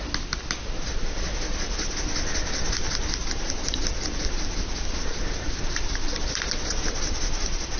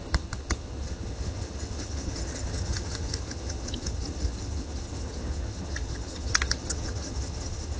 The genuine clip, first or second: first